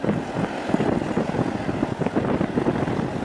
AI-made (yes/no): no